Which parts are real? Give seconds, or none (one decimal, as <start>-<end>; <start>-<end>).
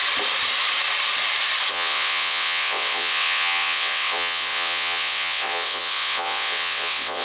0.0-1.7